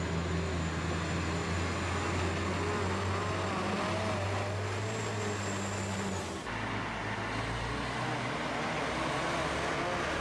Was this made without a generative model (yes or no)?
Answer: yes